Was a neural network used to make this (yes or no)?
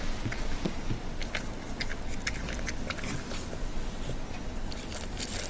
no